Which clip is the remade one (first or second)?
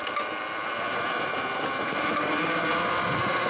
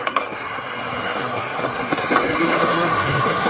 second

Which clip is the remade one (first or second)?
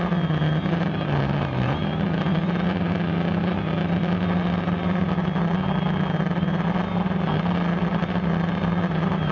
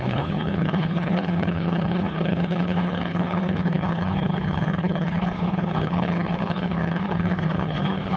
second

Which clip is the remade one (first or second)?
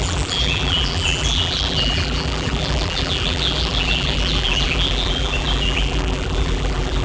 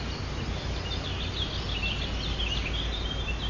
first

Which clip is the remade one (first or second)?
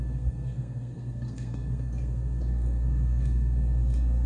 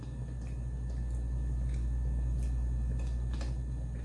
first